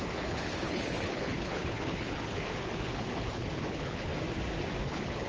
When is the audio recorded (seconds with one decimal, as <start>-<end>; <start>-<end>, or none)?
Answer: 4.1-4.8